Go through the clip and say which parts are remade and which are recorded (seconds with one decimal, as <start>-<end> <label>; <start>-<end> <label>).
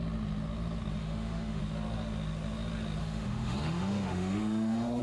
0.0-1.0 recorded; 1.0-1.6 remade; 1.6-3.0 recorded; 3.0-5.0 remade